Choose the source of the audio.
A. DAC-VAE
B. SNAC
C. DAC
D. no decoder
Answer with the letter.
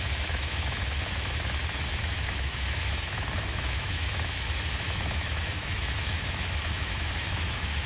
A